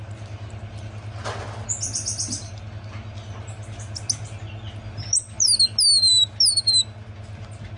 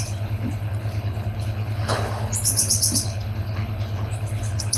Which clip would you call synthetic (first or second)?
second